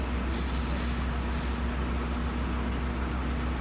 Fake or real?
real